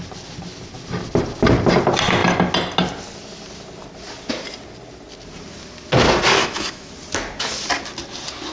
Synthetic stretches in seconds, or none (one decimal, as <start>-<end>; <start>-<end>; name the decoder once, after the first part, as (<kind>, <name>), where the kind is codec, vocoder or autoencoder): 6.4-6.9 (autoencoder, DAC-VAE)